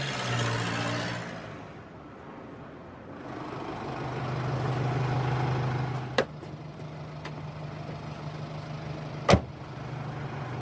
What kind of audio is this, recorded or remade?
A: recorded